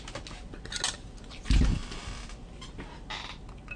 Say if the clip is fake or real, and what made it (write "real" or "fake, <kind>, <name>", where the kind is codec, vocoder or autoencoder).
real